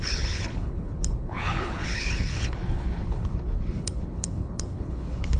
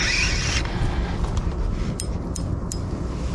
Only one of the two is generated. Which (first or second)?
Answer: first